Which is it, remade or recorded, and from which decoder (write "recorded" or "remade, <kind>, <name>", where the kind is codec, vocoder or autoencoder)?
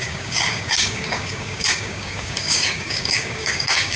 remade, codec, DAC